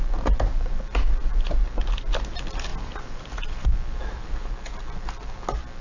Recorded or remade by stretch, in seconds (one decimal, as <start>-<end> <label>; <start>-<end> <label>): 0.0-2.2 remade; 2.2-2.7 recorded; 2.7-4.5 remade; 4.5-5.8 recorded